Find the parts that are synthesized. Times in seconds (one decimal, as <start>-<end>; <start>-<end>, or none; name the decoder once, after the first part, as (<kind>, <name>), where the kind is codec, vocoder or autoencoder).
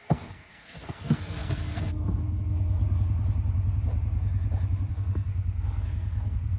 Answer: 0.0-2.8 (codec, SNAC); 4.9-6.6